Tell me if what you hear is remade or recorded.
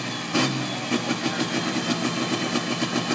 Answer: recorded